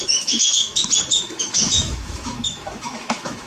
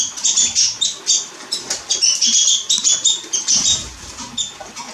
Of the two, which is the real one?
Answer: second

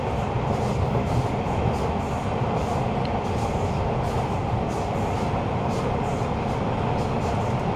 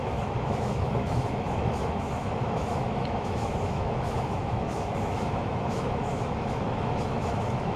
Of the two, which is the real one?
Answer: first